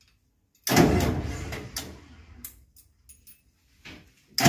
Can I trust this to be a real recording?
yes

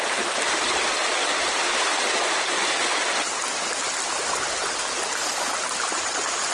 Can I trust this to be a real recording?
yes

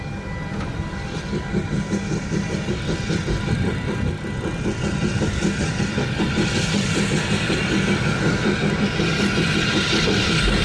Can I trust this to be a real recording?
yes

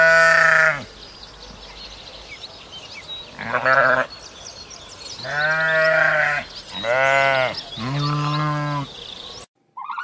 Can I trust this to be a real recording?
yes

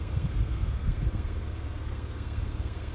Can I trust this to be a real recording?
no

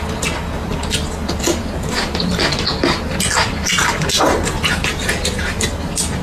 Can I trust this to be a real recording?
yes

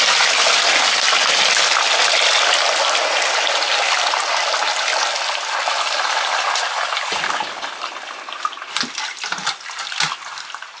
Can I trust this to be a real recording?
yes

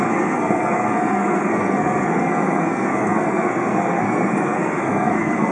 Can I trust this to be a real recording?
no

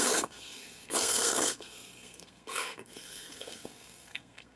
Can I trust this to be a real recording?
no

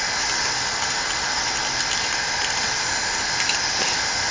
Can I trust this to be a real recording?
yes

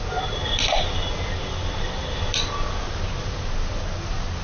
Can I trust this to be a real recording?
yes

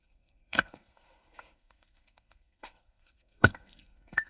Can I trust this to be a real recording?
no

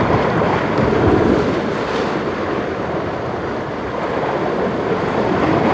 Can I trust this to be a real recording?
yes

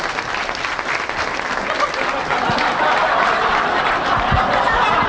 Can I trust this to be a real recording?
yes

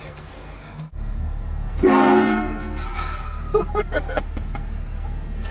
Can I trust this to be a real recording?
no